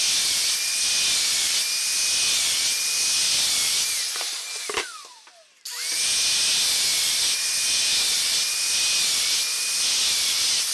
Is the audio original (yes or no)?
yes